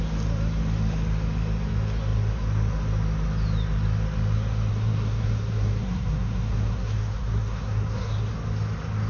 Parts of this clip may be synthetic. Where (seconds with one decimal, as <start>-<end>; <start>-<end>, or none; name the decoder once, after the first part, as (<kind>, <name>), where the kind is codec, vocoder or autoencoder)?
4.7-8.3 (codec, SNAC)